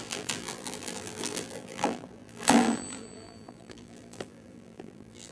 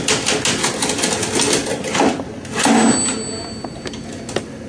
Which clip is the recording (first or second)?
second